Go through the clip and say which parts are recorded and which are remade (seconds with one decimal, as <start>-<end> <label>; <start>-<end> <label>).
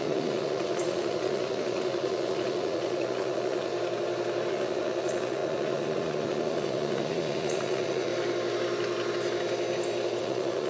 0.0-3.7 remade; 3.7-4.5 recorded; 4.5-8.1 remade; 8.1-10.2 recorded; 10.2-10.7 remade